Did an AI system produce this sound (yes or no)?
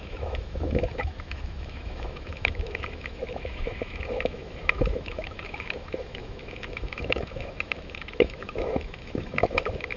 yes